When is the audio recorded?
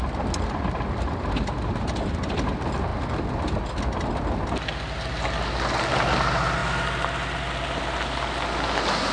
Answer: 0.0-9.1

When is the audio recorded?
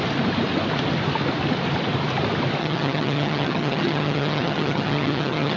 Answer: 0.0-2.6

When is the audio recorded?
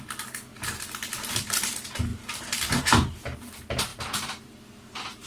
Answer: 0.0-2.1; 2.8-5.3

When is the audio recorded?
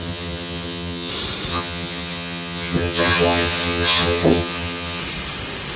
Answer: 1.1-1.5; 5.0-5.8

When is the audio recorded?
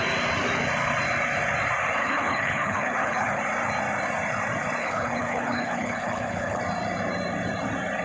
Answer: 0.0-2.0; 3.4-4.8; 6.6-8.0